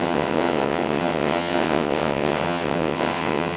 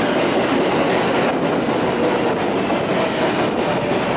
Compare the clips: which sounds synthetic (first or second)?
first